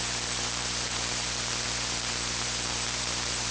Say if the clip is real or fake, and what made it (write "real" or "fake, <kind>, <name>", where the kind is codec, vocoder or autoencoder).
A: fake, vocoder, BigVGAN v2